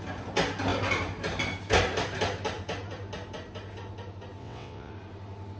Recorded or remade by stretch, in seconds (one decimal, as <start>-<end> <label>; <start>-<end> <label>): 0.0-4.4 recorded; 4.4-4.9 remade; 4.9-5.6 recorded